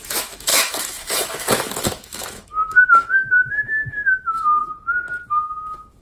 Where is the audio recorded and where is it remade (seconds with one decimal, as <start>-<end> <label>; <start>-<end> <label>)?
0.0-4.6 remade; 4.6-5.3 recorded; 5.3-6.0 remade